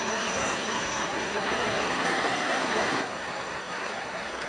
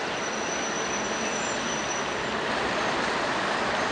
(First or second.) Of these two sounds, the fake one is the first